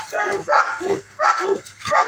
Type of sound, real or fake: fake